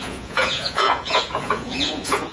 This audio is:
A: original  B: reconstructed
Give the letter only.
B